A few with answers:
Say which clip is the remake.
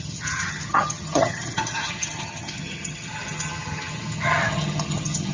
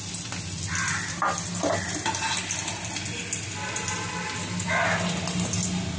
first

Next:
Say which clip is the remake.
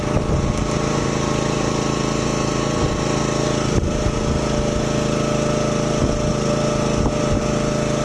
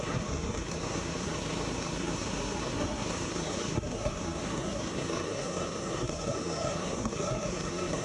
second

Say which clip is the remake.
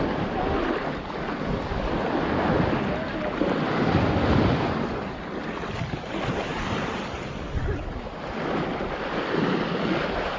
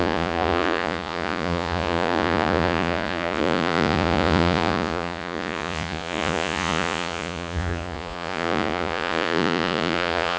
second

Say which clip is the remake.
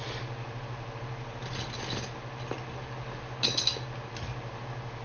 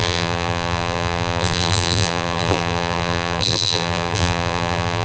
second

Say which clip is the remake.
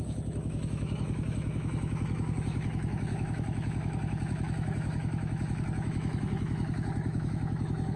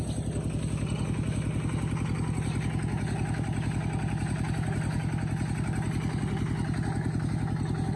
first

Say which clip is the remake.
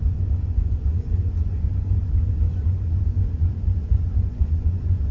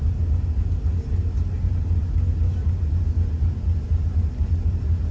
first